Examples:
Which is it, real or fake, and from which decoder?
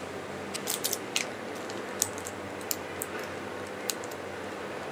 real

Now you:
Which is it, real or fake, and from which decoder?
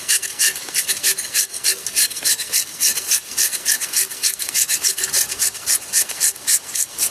fake, codec, SNAC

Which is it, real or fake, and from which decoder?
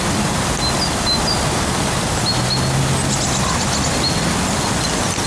real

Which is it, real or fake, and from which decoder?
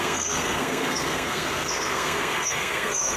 fake, codec, SNAC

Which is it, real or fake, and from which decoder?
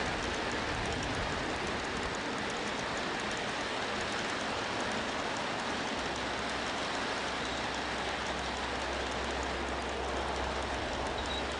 real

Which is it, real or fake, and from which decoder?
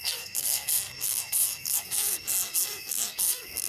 fake, codec, SNAC